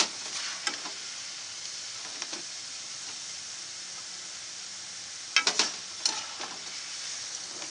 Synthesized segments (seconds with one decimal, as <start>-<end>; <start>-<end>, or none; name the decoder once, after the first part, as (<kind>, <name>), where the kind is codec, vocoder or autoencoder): none